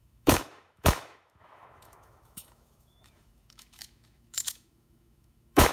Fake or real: fake